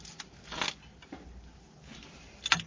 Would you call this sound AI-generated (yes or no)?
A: no